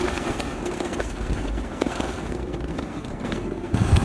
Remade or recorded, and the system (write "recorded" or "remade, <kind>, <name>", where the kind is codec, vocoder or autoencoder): remade, codec, SNAC